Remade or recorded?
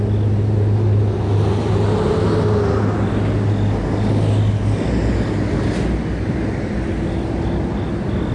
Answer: recorded